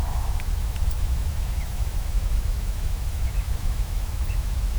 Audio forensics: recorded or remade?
remade